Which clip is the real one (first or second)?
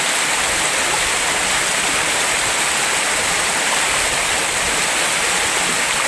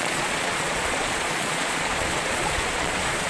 first